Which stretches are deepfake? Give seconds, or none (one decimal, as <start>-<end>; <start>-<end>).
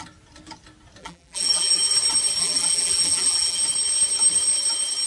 1.0-1.8; 2.4-3.6